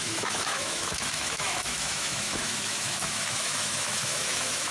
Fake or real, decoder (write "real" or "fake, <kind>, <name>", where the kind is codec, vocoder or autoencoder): fake, autoencoder, DAC-VAE